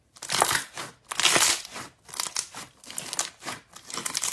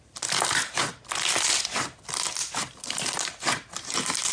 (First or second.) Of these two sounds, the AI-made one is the second